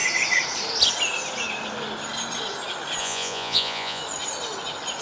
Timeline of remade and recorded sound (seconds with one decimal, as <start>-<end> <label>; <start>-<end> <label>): 0.0-3.0 recorded; 3.0-4.0 remade; 4.0-5.0 recorded